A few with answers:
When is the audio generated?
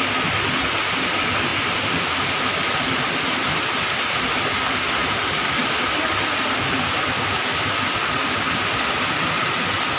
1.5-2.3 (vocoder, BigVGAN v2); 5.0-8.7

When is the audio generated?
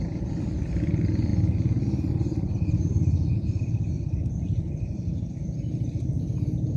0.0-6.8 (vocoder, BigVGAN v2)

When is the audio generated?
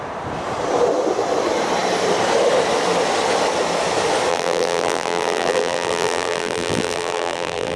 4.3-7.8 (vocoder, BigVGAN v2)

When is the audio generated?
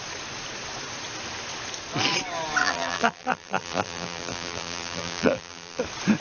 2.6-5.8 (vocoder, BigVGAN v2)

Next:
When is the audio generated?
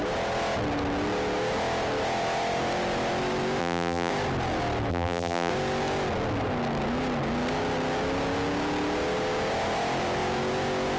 3.6-4.1 (vocoder, BigVGAN v2); 4.9-5.5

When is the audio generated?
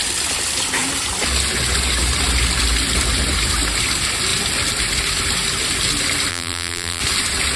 6.3-7.0 (vocoder, BigVGAN v2)